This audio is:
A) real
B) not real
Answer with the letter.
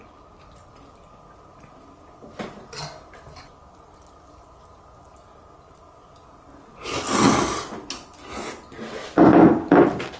A